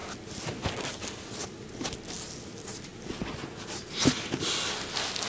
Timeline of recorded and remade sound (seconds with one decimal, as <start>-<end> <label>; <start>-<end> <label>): 0.0-5.3 recorded